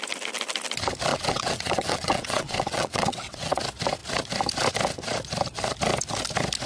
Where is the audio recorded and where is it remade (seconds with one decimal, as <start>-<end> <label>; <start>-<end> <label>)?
0.0-1.1 recorded; 1.1-3.6 remade; 3.6-6.7 recorded